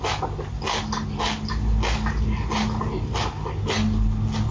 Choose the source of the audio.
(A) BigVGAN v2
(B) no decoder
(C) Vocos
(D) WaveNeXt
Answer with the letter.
B